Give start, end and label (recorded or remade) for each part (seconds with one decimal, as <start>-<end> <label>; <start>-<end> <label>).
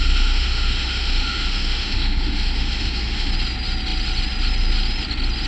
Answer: 0.0-3.3 remade; 3.3-5.5 recorded